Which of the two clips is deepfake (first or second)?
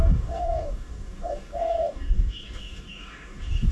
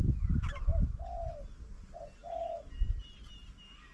first